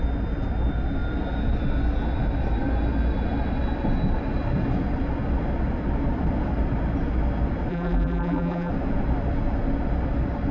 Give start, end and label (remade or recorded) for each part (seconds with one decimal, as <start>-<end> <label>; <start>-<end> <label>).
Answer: 0.0-7.7 recorded; 7.7-8.7 remade; 8.7-10.5 recorded